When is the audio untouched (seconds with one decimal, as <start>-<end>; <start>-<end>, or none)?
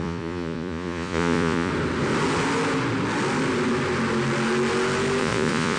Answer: 1.7-5.2